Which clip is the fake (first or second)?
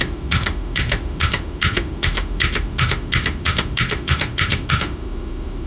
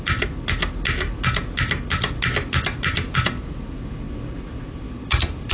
first